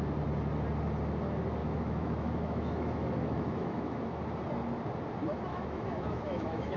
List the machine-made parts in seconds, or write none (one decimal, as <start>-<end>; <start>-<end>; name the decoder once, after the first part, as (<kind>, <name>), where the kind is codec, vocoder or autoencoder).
1.6-4.0 (autoencoder, DAC-VAE); 5.5-6.8